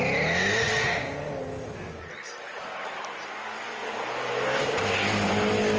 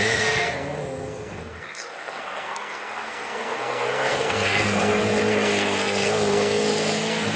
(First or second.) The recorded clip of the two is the first